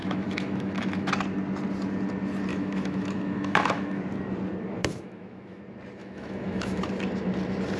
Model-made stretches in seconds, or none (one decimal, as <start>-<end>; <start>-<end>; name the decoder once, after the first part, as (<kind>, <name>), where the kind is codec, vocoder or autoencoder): 0.0-1.1 (autoencoder, DAC-VAE); 2.5-4.0; 4.8-5.6; 6.0-6.8